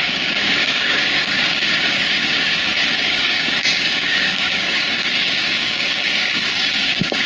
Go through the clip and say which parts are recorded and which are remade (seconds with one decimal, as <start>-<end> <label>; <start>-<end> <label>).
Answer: 0.0-7.3 remade